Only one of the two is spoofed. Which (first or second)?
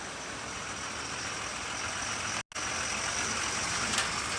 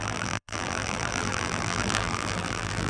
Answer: second